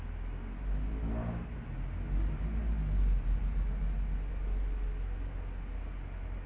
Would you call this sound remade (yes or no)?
no